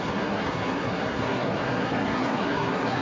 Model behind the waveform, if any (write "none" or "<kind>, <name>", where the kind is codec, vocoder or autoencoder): codec, SNAC